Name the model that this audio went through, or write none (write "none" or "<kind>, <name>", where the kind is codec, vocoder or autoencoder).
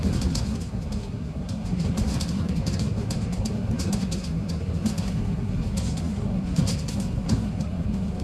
codec, SNAC